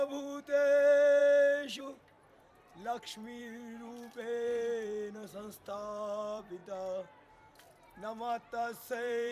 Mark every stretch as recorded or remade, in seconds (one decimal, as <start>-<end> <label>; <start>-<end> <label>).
0.0-6.6 remade; 6.6-7.5 recorded; 7.5-9.3 remade